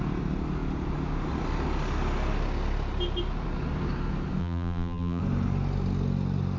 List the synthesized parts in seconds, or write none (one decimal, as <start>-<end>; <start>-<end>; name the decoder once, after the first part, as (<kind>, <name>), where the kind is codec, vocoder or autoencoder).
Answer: 4.4-5.2 (vocoder, BigVGAN v2)